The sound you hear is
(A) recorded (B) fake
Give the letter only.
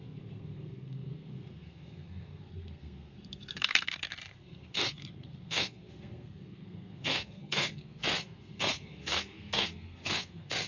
B